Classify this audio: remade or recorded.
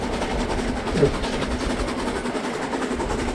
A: recorded